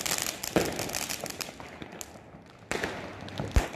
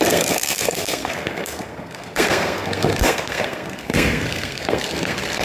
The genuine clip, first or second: first